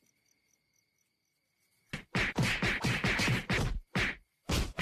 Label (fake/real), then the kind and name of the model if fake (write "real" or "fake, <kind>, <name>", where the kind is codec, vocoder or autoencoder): real